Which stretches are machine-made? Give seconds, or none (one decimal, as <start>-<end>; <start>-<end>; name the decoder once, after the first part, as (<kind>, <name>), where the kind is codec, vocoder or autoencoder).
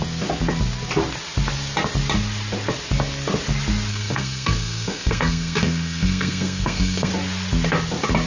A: 3.9-7.1 (codec, SNAC)